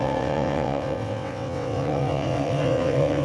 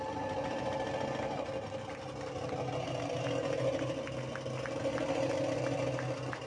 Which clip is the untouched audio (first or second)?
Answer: second